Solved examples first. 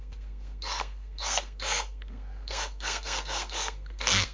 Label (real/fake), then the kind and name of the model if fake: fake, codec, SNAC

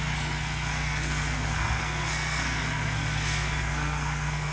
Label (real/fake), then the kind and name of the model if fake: fake, codec, SNAC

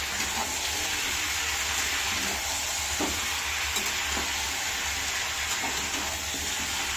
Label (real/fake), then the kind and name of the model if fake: real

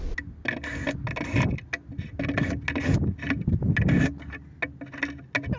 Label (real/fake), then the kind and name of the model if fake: real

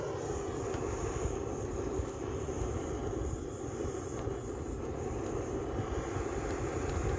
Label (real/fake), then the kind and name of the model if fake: real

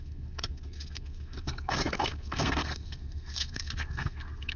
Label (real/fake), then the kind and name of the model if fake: fake, codec, SNAC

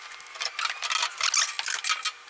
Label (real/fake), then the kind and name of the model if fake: real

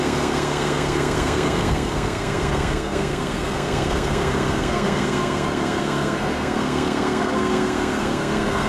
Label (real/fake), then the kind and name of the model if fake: fake, codec, SNAC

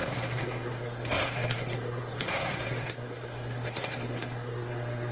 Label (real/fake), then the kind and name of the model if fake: fake, codec, SNAC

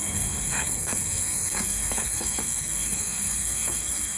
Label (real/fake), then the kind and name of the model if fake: fake, codec, SNAC